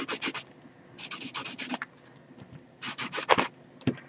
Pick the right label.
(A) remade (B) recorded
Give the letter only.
B